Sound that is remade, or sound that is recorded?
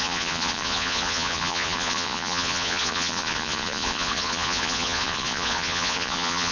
remade